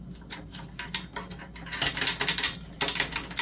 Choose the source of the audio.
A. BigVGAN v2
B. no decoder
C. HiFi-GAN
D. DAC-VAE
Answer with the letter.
B